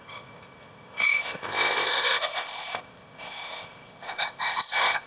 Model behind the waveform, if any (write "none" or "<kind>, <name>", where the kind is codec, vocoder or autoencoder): codec, ZipCodec